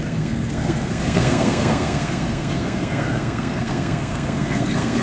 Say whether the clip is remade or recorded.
remade